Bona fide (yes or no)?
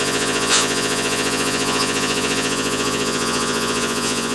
no